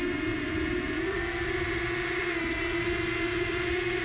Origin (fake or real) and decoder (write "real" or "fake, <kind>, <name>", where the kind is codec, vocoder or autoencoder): real